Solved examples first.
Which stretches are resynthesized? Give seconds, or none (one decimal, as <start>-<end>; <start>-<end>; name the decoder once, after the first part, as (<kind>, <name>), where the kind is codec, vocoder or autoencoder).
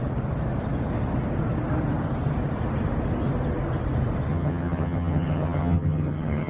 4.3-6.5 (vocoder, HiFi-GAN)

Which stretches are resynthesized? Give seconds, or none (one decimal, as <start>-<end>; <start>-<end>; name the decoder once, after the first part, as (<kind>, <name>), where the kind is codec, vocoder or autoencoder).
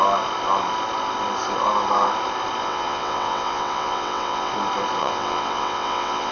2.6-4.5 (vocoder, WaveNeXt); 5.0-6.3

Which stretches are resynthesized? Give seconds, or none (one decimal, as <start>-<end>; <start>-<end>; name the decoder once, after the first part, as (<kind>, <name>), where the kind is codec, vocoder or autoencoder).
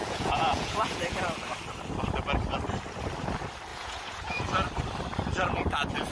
0.0-1.2 (vocoder, Vocos); 3.7-4.4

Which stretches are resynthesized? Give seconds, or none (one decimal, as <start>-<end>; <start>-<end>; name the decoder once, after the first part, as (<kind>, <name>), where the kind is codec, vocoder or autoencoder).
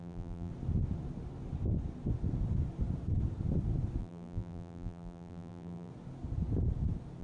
0.0-0.5 (vocoder, BigVGAN v2); 4.0-5.9